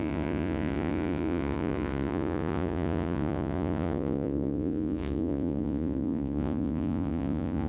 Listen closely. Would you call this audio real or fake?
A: fake